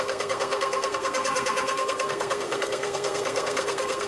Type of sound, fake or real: fake